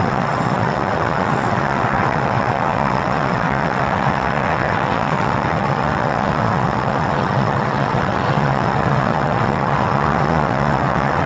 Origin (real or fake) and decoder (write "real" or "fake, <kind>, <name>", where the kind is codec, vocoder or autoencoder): fake, vocoder, WaveNeXt